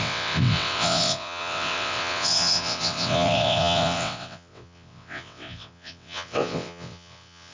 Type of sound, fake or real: fake